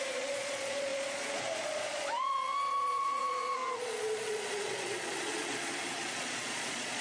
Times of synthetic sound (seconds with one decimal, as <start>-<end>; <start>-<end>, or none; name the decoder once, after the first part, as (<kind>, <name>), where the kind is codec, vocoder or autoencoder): 0.0-7.0 (vocoder, Vocos)